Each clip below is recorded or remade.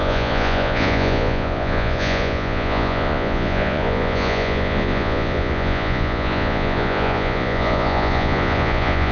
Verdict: remade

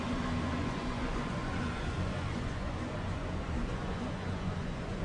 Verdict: remade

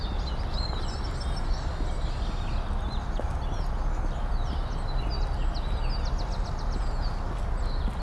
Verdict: recorded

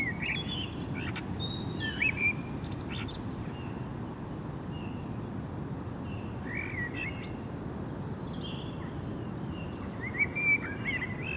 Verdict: recorded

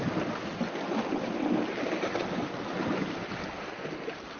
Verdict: recorded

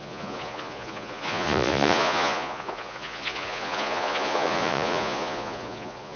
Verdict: remade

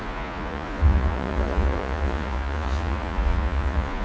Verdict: remade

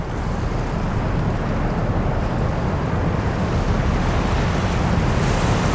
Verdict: recorded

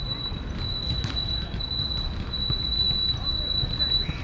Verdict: recorded